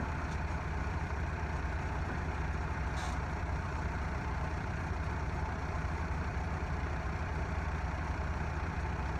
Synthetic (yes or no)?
yes